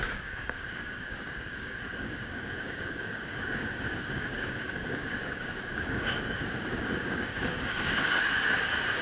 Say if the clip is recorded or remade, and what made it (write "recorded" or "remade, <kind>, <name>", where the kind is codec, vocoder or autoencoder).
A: remade, codec, DAC